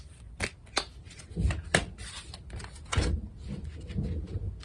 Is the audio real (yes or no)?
yes